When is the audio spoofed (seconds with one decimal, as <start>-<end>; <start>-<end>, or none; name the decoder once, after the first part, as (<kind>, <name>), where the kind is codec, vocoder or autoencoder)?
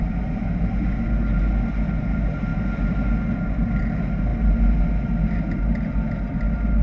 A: none